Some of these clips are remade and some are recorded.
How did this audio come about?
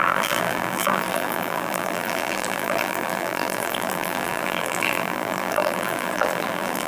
remade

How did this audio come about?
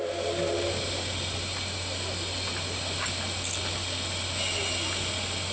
recorded